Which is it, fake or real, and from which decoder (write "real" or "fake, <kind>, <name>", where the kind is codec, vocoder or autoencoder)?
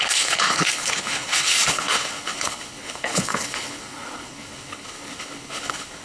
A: fake, codec, HILCodec